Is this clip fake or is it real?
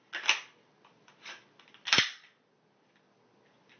real